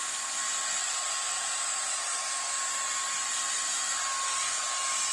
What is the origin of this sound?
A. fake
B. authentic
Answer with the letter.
B